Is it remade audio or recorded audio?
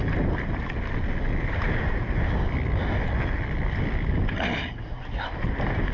recorded